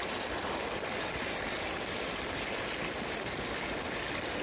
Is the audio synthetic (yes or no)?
no